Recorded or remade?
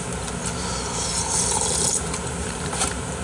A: remade